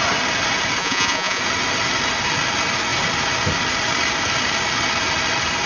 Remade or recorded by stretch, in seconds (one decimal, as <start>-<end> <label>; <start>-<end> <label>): 0.0-0.8 recorded; 0.8-1.4 remade; 1.4-5.7 recorded